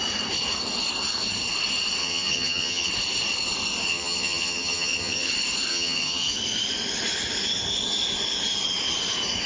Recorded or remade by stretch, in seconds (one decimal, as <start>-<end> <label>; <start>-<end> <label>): 0.0-2.0 recorded; 2.0-2.9 remade; 2.9-3.9 recorded; 3.9-5.3 remade; 5.3-5.7 recorded; 5.7-6.3 remade; 6.3-9.5 recorded